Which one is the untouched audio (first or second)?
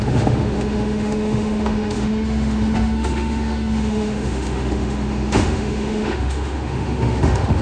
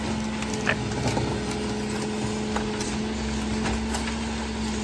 second